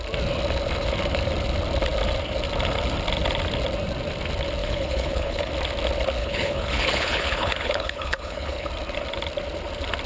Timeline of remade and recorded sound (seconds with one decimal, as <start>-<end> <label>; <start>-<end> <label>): 0.0-4.6 recorded; 4.6-5.5 remade; 5.5-6.2 recorded; 6.2-8.7 remade; 8.7-10.1 recorded